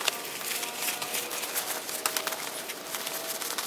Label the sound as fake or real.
real